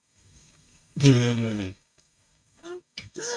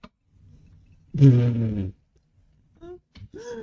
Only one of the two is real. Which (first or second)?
second